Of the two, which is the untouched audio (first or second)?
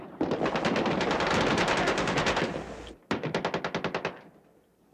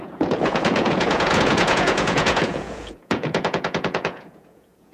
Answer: first